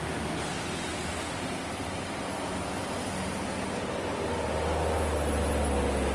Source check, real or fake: real